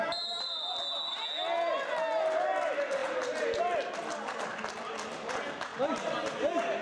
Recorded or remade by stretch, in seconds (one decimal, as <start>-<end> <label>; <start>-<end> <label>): 0.0-3.0 recorded; 3.0-3.6 remade; 3.6-6.8 recorded